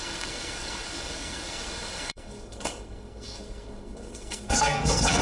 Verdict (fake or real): fake